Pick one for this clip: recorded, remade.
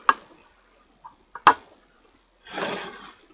recorded